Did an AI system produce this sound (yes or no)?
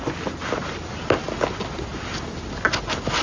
no